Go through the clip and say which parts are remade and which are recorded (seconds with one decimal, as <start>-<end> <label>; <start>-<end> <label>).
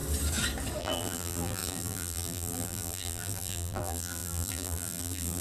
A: 0.0-0.8 recorded; 0.8-5.4 remade